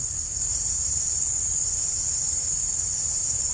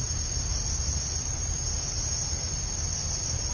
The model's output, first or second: first